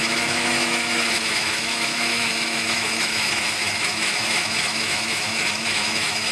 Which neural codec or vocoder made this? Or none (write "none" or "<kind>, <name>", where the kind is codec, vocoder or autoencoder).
autoencoder, DAC-VAE